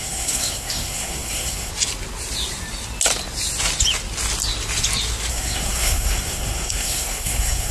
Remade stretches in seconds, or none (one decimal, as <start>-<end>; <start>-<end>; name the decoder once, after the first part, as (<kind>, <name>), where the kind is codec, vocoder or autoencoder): 0.0-1.7 (codec, SNAC); 5.3-7.7